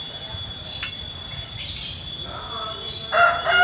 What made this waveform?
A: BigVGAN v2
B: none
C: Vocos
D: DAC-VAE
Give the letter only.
B